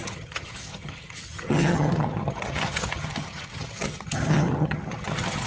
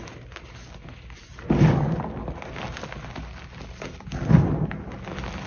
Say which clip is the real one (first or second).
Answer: second